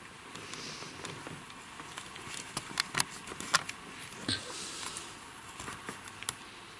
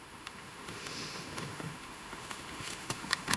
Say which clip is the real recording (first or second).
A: first